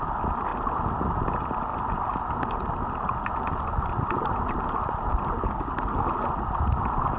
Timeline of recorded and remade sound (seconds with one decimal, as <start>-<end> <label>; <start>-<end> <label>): 0.0-7.2 recorded